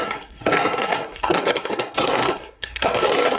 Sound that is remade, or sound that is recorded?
remade